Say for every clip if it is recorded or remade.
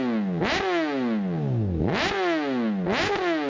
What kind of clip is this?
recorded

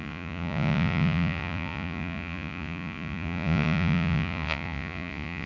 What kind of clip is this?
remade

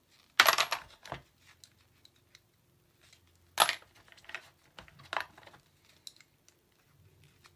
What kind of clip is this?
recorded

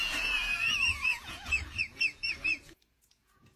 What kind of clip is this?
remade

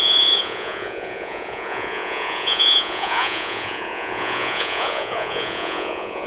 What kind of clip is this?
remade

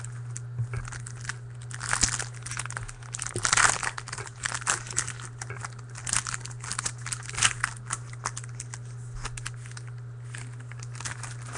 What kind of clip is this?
recorded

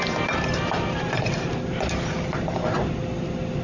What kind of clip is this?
recorded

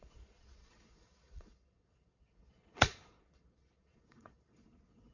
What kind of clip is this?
remade